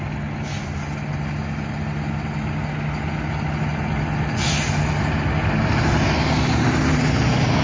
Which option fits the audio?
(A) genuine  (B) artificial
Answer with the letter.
A